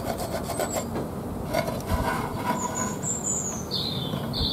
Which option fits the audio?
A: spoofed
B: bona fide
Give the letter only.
B